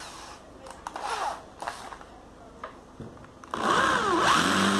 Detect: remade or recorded recorded